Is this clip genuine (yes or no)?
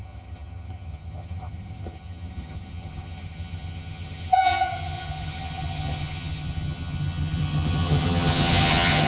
no